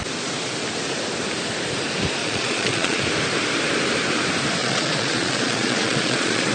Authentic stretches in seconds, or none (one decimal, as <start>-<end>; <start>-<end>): 0.0-2.2; 3.0-4.6